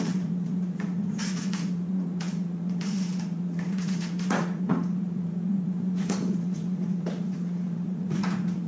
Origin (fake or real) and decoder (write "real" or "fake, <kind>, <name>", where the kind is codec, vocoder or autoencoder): fake, vocoder, Vocos